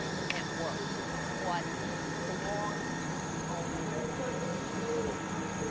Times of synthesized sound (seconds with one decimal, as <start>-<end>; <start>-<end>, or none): none